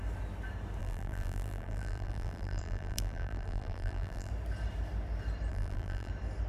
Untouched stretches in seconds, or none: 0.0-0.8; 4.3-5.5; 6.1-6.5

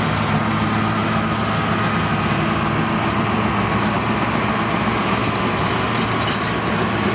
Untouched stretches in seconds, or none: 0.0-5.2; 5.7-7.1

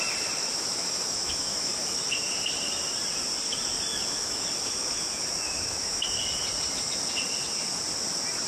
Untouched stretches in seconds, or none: 0.0-0.7; 2.0-3.9; 6.0-8.5

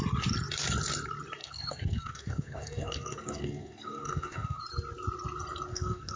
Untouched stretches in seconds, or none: 0.0-1.4; 4.6-5.7

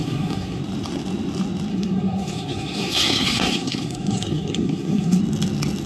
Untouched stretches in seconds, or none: 0.6-1.7; 5.2-5.9

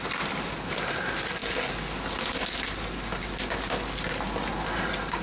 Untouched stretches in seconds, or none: 1.4-3.2